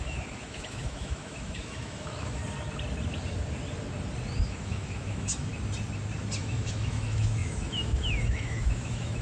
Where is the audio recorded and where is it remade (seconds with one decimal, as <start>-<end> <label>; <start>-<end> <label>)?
0.0-2.4 remade; 2.4-4.4 recorded; 4.4-5.5 remade; 5.5-6.4 recorded; 6.4-9.2 remade